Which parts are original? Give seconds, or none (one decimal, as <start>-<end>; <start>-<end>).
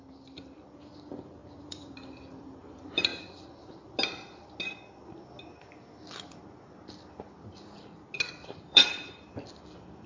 3.1-8.3